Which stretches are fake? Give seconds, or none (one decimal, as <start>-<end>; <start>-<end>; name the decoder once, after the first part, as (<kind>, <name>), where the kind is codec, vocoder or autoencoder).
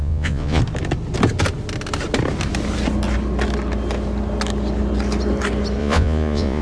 0.0-0.6 (vocoder, Vocos); 5.8-6.6